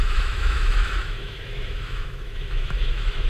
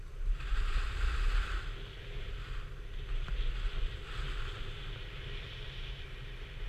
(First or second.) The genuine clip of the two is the second